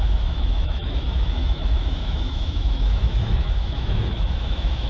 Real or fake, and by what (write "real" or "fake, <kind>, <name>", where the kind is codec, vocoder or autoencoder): fake, autoencoder, DAC-VAE